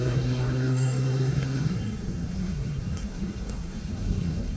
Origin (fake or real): fake